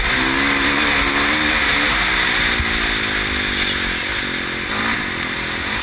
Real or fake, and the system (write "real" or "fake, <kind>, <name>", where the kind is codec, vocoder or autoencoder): real